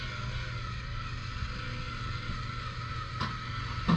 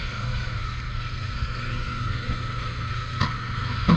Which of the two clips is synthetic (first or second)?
second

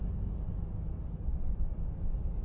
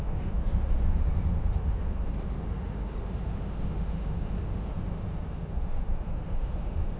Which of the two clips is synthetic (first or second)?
second